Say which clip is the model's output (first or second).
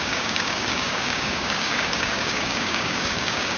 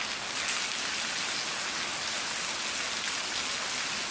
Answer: first